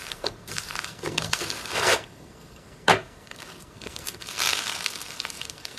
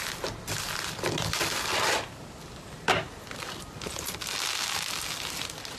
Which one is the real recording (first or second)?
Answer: second